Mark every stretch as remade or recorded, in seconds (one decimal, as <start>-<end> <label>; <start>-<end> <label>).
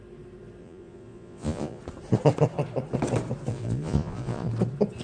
0.0-0.6 recorded; 0.6-1.8 remade; 1.8-3.5 recorded; 3.5-4.5 remade; 4.5-5.0 recorded